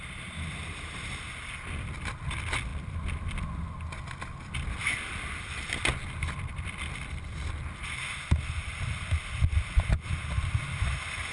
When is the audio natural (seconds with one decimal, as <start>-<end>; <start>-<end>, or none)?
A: 0.0-11.3